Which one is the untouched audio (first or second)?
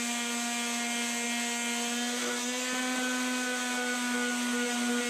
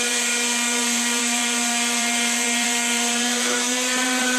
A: first